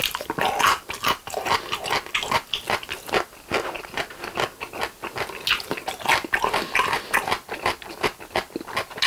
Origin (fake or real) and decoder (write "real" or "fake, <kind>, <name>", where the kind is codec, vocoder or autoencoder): real